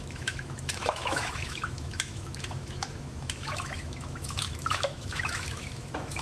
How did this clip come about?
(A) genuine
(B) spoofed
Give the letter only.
B